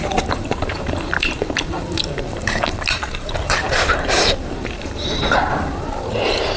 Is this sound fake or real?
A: fake